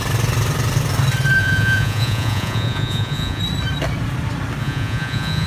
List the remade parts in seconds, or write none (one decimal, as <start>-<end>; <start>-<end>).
1.4-3.4; 4.6-5.5